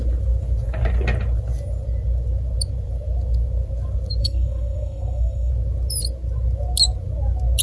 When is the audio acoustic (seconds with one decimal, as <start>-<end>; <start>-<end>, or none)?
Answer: 0.0-4.2; 5.5-7.6